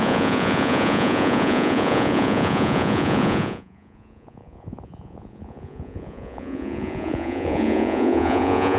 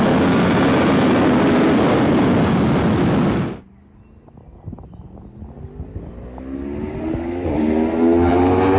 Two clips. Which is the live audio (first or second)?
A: second